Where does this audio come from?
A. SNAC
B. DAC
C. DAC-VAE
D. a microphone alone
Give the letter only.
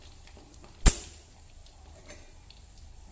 D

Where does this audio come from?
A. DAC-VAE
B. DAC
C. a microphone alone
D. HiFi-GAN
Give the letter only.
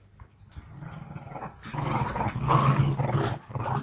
B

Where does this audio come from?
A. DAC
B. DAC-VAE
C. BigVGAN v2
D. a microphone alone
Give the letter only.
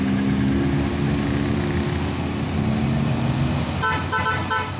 D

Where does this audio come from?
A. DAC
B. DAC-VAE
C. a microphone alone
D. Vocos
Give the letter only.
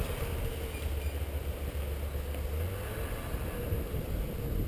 C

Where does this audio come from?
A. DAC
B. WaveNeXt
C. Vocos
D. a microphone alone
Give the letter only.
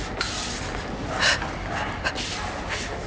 D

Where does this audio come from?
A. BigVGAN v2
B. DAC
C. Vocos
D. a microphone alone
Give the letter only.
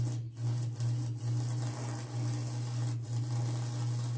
D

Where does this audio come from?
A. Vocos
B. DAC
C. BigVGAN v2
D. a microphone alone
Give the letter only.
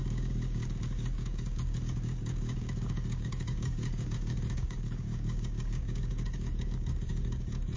B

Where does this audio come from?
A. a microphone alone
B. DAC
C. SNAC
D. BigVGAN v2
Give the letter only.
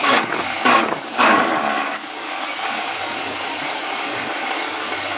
B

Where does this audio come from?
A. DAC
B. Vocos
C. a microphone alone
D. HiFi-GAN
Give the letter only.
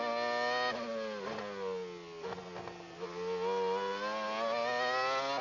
C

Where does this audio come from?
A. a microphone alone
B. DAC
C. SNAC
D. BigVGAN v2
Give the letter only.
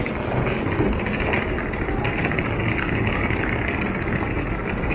A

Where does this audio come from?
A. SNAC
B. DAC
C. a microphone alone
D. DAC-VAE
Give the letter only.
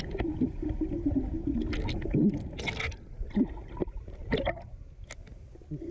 C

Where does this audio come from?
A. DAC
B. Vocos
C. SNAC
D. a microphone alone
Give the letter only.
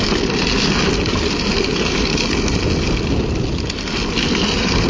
D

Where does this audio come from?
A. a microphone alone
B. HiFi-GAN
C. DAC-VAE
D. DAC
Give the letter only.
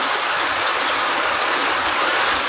D